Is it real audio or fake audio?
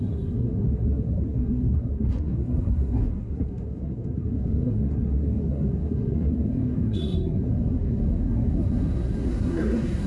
fake